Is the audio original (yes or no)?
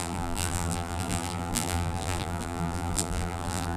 no